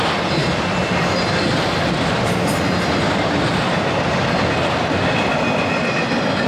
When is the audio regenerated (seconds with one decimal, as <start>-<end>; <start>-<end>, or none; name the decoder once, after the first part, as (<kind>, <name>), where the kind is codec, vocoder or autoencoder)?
none